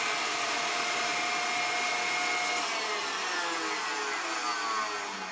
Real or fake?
real